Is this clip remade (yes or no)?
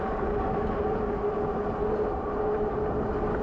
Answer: no